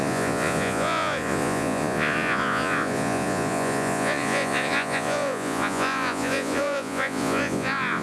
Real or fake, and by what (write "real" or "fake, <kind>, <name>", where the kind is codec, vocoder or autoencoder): fake, vocoder, Vocos